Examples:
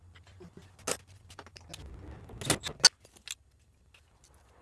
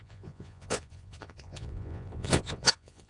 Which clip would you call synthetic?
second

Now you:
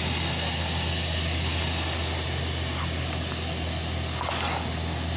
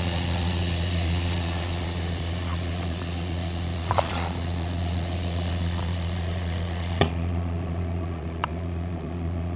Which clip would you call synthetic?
second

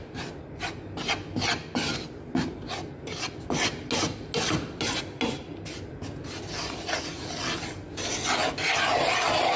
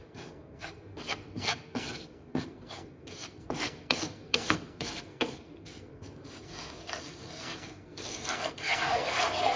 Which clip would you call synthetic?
second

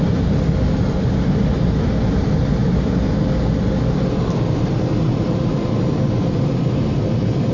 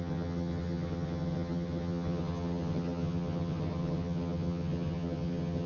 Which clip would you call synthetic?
second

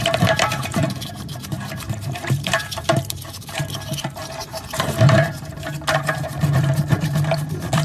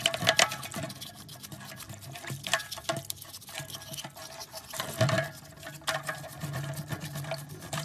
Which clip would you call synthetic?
first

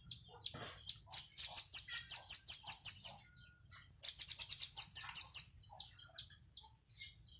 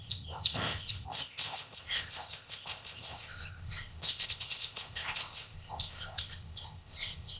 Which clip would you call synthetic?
second